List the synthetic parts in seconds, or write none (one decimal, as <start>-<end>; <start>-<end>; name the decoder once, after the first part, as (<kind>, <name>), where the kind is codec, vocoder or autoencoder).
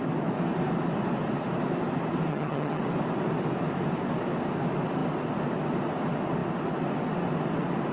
2.3-2.8 (vocoder, HiFi-GAN)